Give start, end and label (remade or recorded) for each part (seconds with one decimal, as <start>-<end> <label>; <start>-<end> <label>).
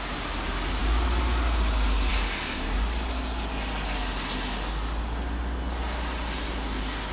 0.0-7.1 recorded